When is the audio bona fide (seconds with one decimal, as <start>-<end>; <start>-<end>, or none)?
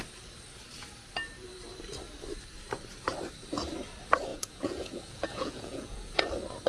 0.0-4.3; 6.2-6.7